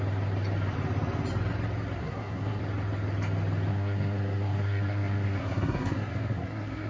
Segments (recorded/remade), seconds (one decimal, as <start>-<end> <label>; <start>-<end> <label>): 0.0-2.0 recorded; 2.0-2.6 remade; 2.6-3.7 recorded; 3.7-6.9 remade